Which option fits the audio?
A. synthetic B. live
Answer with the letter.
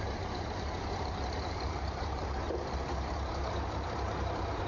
A